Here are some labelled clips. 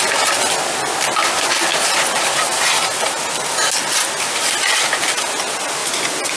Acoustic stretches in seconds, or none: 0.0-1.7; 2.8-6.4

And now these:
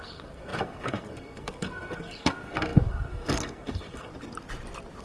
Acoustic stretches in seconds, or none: 4.1-5.0

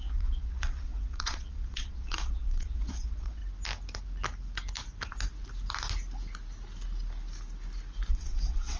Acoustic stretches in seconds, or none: 3.4-8.1

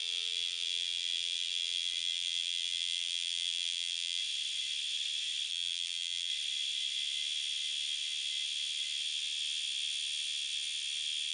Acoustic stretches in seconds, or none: 4.2-5.5; 6.3-11.3

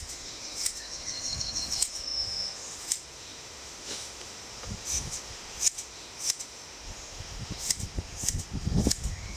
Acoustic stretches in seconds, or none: none

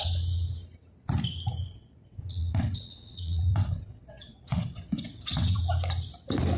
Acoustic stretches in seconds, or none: 0.0-1.6; 5.6-6.6

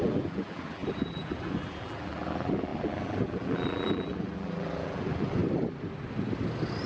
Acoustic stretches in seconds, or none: 5.4-6.9